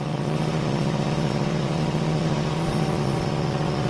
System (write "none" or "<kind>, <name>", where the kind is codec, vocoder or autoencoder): vocoder, Vocos